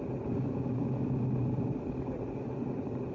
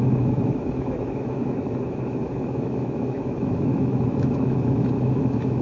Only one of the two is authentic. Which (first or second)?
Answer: first